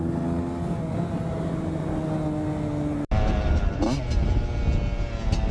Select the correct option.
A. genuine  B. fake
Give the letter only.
A